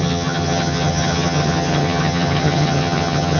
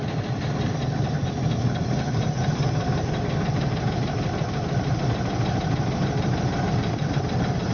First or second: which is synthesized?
first